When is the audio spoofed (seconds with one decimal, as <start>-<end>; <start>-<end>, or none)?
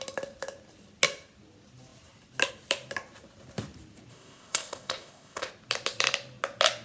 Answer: 4.1-5.5